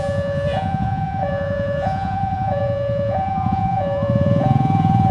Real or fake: fake